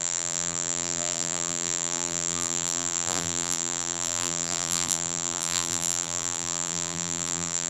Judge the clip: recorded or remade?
remade